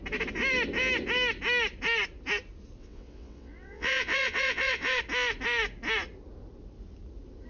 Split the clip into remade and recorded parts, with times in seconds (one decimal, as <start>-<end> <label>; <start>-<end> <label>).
0.0-2.8 recorded; 2.8-5.0 remade; 5.0-7.5 recorded